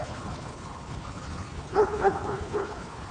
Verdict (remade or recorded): remade